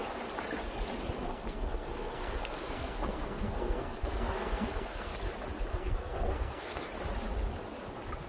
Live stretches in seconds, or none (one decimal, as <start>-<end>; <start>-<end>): 0.0-1.2; 5.1-5.7; 6.9-8.3